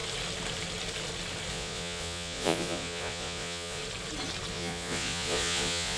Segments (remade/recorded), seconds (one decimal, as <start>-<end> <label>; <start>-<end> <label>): 0.0-1.5 recorded; 1.5-3.8 remade; 3.8-4.5 recorded; 4.5-6.0 remade